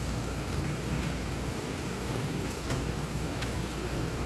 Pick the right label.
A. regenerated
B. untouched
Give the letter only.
A